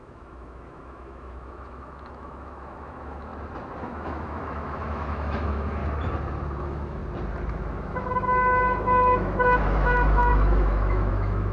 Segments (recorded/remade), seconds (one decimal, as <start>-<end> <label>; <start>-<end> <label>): 0.0-3.3 remade; 3.3-3.8 recorded; 3.8-5.8 remade; 5.8-6.6 recorded; 6.6-7.0 remade; 7.0-7.5 recorded; 7.5-11.5 remade